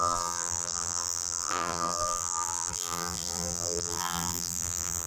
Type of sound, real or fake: fake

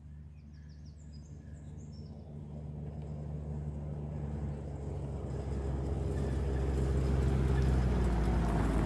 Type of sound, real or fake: real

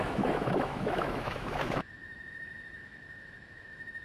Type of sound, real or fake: fake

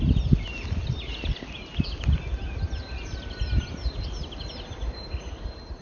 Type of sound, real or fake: real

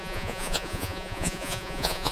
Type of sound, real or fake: fake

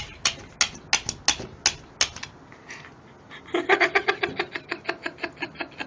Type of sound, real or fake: real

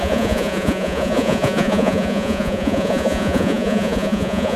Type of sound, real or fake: fake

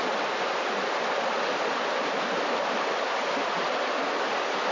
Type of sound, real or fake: real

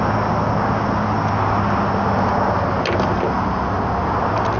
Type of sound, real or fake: real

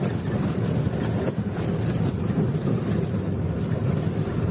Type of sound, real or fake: real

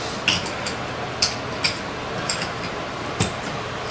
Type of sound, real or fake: real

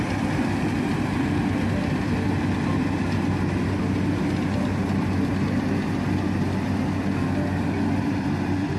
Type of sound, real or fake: real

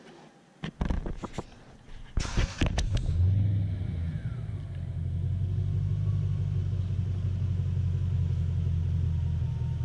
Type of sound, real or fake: real